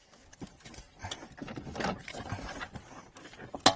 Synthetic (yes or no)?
no